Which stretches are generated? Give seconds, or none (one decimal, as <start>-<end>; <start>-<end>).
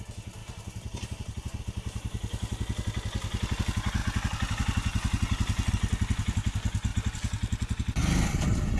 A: none